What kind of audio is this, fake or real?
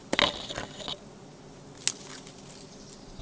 real